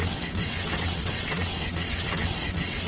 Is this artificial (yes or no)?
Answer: yes